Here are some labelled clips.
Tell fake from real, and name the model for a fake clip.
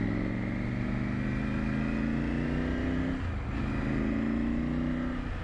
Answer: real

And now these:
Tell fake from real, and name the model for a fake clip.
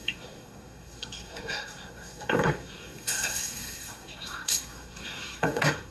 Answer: fake, codec, SNAC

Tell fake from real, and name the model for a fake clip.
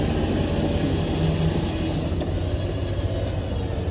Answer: real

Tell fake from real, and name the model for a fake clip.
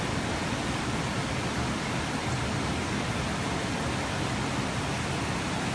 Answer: real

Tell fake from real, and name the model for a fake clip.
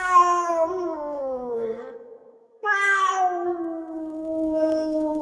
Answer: fake, codec, SNAC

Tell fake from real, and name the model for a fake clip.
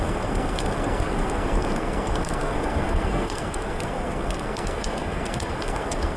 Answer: fake, codec, SNAC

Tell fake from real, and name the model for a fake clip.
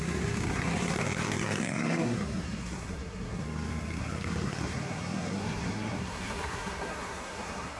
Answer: fake, codec, SNAC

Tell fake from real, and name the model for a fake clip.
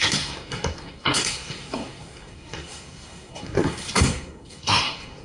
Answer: fake, codec, SNAC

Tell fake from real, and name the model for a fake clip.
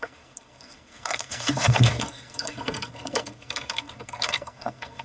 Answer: fake, codec, SNAC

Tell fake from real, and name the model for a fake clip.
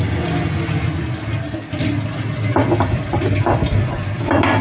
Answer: real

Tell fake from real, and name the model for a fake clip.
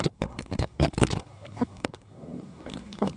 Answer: fake, codec, SNAC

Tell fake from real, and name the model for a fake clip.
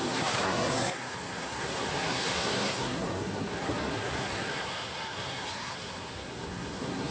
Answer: fake, codec, SNAC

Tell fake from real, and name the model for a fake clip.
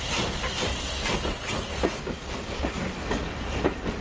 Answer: real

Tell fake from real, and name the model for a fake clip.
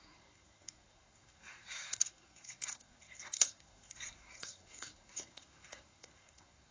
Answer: fake, codec, SNAC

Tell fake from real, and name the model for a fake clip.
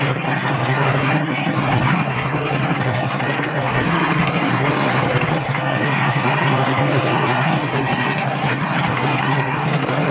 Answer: fake, codec, SNAC